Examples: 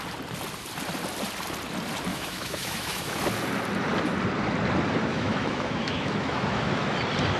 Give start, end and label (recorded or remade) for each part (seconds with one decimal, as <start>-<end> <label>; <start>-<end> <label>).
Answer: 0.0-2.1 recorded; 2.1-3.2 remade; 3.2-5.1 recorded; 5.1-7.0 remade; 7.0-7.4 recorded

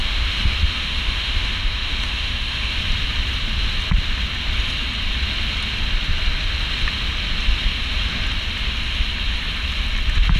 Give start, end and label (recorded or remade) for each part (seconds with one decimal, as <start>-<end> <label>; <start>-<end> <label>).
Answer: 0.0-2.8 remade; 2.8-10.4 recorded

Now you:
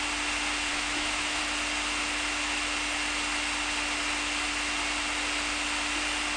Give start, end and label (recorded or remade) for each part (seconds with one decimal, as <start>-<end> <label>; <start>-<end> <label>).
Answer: 0.0-0.7 recorded; 0.7-1.4 remade; 1.4-6.4 recorded